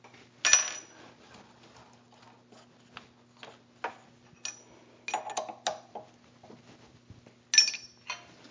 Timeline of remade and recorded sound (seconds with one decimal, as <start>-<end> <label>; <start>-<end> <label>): 0.0-8.5 recorded